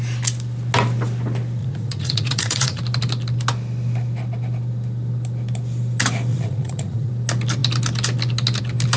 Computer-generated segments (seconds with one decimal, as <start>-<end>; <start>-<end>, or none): 1.6-2.8; 6.3-7.1